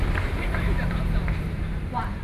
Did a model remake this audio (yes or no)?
no